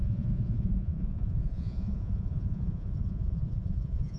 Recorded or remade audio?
remade